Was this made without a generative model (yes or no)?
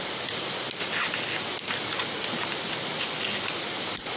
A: yes